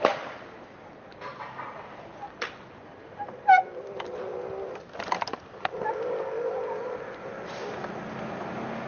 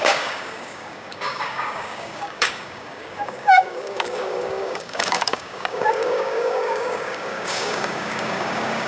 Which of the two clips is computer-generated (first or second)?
second